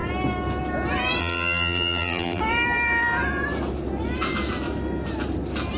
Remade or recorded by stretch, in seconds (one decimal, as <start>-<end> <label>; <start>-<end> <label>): 0.0-1.2 recorded; 1.2-2.4 remade; 2.4-5.8 recorded